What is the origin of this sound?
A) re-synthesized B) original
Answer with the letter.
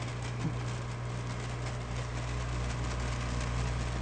B